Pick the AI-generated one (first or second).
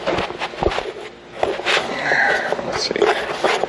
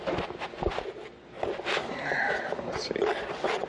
second